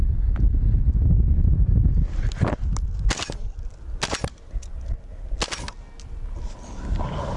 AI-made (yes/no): no